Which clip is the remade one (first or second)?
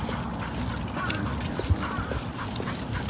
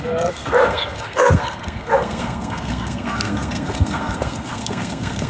second